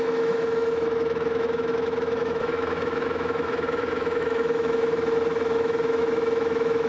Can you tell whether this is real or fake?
fake